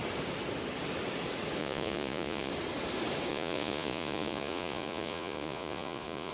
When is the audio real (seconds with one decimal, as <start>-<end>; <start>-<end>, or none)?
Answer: 0.0-1.6; 2.5-3.3